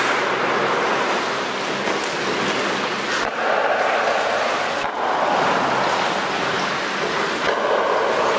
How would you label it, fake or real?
real